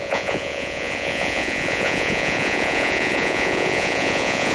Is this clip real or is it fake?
fake